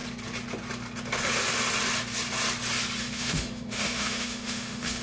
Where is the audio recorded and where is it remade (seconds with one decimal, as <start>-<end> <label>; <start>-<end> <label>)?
0.0-3.0 recorded; 3.0-5.0 remade